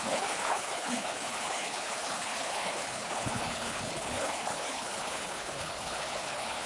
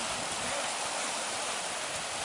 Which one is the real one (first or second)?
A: second